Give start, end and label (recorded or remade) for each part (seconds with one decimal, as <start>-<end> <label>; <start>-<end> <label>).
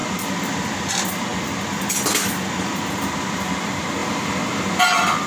0.0-0.9 remade; 0.9-5.3 recorded